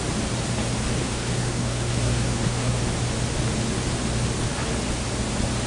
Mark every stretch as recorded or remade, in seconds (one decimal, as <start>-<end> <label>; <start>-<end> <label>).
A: 0.0-1.0 recorded; 1.0-2.8 remade; 2.8-5.7 recorded